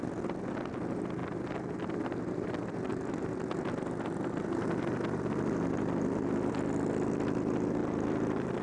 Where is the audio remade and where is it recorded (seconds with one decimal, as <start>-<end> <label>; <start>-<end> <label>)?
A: 0.0-8.6 recorded